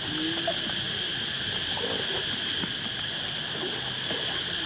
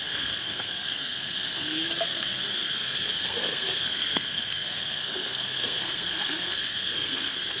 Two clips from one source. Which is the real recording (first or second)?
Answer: first